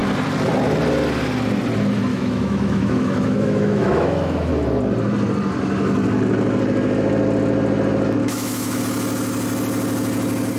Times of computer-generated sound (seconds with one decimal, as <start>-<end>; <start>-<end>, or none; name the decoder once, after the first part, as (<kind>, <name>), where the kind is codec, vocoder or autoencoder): 2.1-4.5 (autoencoder, DAC-VAE); 8.2-8.8